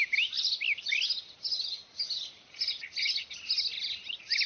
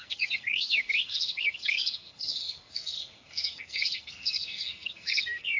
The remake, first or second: second